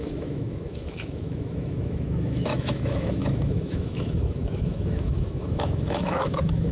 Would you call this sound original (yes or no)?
no